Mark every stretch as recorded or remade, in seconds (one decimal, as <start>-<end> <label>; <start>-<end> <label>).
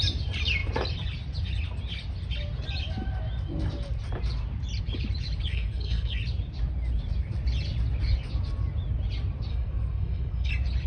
0.0-5.5 recorded; 5.5-6.2 remade; 6.2-9.5 recorded; 9.5-10.5 remade; 10.5-10.9 recorded